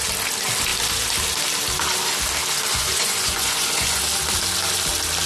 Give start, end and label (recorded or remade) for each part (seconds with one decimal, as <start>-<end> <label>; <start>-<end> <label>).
0.0-2.7 recorded; 2.7-4.0 remade; 4.0-5.3 recorded